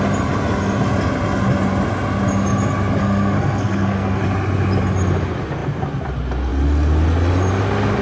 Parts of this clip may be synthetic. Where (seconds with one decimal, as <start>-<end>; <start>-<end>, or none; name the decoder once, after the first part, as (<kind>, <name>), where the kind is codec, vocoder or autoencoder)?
3.0-4.2 (codec, SNAC)